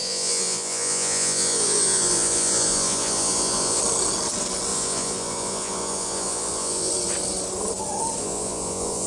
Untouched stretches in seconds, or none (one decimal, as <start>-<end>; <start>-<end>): 3.8-4.7; 6.9-8.2